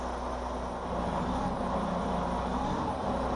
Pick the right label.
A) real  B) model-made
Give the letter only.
A